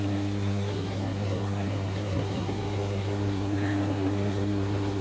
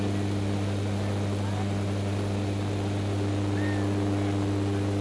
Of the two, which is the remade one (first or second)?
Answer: first